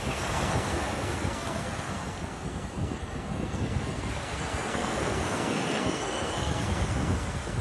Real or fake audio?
fake